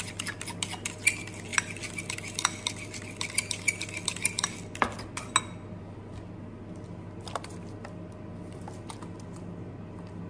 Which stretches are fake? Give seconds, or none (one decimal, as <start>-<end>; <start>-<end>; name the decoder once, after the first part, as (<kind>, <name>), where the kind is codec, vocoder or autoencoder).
none